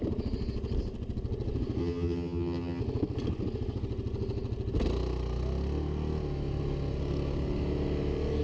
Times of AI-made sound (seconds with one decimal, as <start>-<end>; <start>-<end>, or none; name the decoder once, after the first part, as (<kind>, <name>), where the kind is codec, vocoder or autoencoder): 1.8-2.8 (vocoder, HiFi-GAN)